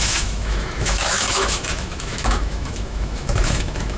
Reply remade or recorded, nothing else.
remade